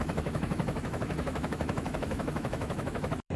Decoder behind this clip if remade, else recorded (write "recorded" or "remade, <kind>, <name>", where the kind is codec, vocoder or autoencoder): remade, autoencoder, DAC-VAE